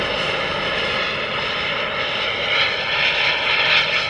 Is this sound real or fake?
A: real